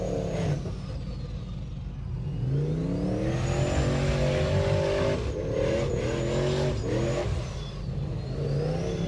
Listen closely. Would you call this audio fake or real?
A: real